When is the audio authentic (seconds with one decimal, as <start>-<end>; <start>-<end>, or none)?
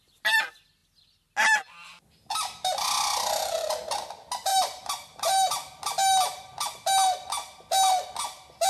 0.0-4.5; 5.5-8.7